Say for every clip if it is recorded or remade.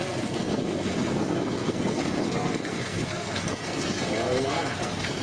remade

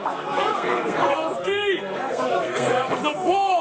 remade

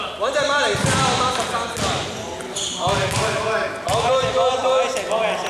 recorded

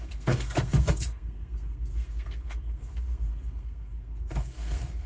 remade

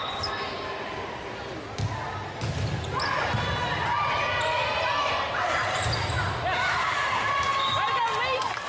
recorded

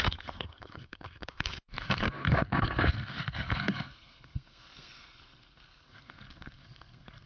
remade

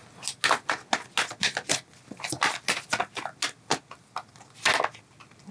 recorded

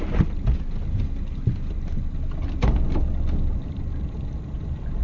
recorded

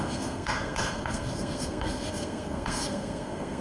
remade